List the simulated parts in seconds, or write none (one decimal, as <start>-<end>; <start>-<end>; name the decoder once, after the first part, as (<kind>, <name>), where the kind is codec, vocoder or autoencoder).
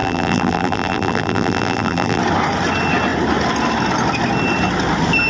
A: 0.0-2.2 (vocoder, BigVGAN v2)